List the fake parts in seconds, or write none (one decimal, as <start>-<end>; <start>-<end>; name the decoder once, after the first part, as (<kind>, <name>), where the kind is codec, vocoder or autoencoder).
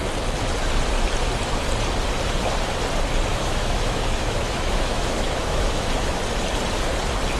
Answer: 3.3-6.2 (autoencoder, DAC-VAE)